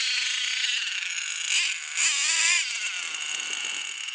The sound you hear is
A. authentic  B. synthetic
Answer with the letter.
A